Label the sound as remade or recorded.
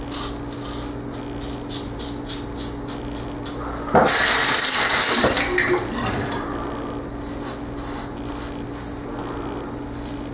recorded